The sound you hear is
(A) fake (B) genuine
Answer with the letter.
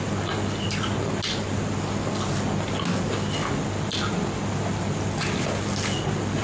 B